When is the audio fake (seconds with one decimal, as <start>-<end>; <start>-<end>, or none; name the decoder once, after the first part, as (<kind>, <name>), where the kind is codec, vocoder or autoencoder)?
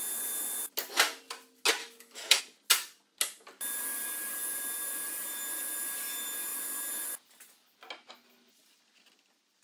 1.8-2.4 (autoencoder, DAC-VAE)